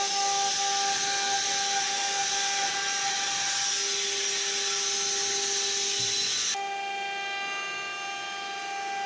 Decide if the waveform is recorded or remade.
recorded